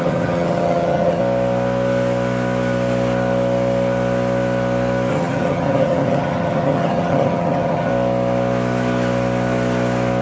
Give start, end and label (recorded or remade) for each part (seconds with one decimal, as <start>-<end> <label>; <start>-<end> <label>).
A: 0.0-1.2 remade; 1.2-5.1 recorded; 5.1-7.9 remade; 7.9-10.2 recorded

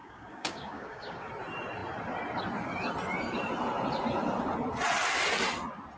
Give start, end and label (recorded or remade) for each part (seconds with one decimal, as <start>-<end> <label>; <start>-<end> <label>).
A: 0.0-1.3 remade; 1.3-6.0 recorded

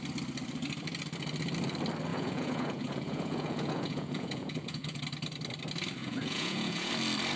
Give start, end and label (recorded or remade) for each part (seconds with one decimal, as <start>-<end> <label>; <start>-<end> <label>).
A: 0.0-2.1 recorded; 2.1-5.0 remade; 5.0-6.0 recorded; 6.0-6.9 remade; 6.9-7.4 recorded

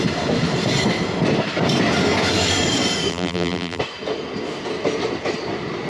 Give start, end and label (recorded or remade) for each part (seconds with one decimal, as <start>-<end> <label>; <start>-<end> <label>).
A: 0.0-3.1 recorded; 3.1-3.8 remade; 3.8-5.9 recorded